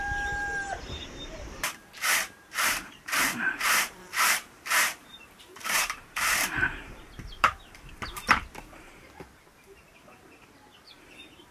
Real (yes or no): no